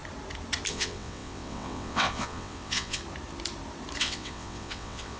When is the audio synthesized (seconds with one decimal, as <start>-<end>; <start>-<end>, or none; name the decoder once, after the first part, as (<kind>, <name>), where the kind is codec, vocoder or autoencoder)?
0.7-3.0 (vocoder, WaveNeXt); 4.0-5.2